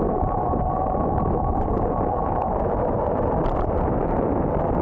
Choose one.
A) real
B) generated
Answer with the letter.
A